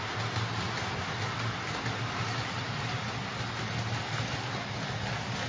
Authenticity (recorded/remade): recorded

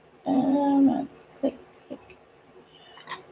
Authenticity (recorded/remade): recorded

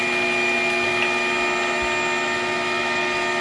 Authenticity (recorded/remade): recorded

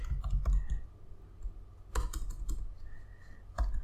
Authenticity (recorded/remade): recorded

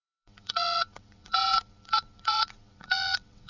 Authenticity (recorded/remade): remade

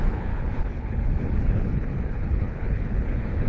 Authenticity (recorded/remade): remade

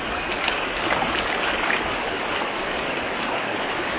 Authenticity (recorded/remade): remade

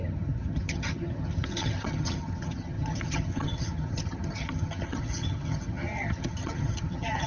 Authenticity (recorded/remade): remade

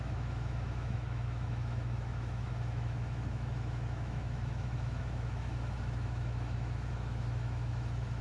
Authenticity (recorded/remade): remade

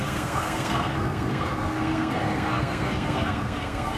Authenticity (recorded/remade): remade